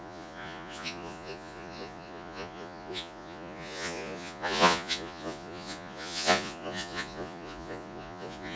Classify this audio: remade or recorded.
remade